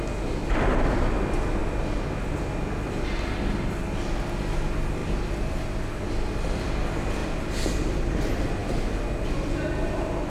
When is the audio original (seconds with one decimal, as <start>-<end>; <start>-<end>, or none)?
0.0-5.0; 5.6-7.2; 8.1-10.3